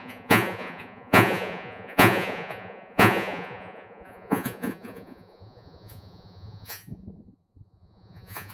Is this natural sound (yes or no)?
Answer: no